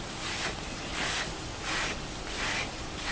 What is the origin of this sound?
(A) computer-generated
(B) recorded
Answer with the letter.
B